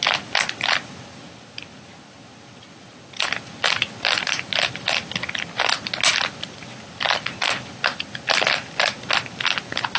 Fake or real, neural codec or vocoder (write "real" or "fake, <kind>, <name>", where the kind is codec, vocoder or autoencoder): real